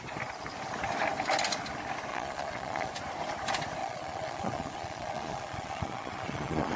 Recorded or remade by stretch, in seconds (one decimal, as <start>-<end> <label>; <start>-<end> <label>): 0.0-2.1 recorded; 2.1-2.9 remade; 2.9-3.8 recorded; 3.8-6.8 remade